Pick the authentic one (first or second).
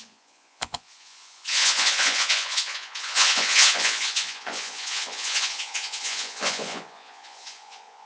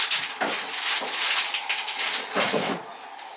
second